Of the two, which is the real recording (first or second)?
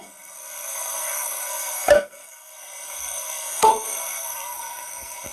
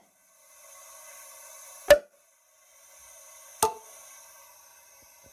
second